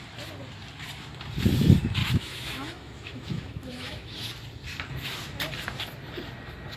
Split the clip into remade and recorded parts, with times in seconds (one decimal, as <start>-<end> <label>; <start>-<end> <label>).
0.0-2.0 recorded; 2.0-4.3 remade; 4.3-6.8 recorded